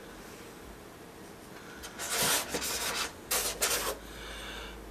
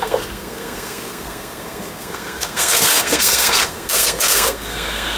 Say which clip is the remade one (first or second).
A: second